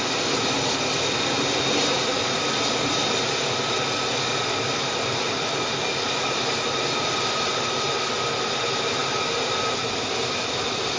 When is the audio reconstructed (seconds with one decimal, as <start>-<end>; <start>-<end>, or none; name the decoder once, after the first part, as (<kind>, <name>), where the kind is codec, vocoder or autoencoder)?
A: none